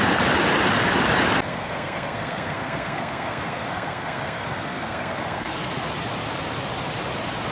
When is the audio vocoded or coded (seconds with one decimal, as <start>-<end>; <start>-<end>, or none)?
1.5-5.7